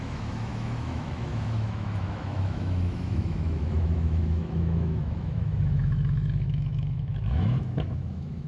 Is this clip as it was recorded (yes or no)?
no